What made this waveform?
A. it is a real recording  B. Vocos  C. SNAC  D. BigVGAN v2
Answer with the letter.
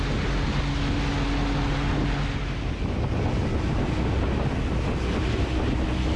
A